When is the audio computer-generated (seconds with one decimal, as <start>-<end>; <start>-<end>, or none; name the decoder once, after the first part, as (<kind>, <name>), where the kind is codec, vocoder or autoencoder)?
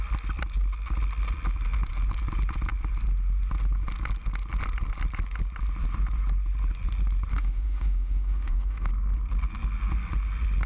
7.3-8.9 (autoencoder, DAC-VAE)